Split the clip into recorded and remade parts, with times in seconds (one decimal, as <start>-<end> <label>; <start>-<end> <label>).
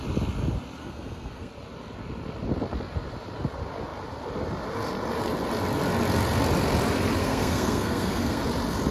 0.0-0.8 recorded; 0.8-1.5 remade; 1.5-7.2 recorded; 7.2-8.4 remade; 8.4-8.9 recorded